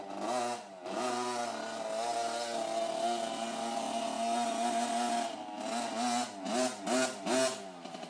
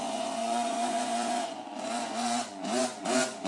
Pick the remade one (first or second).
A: second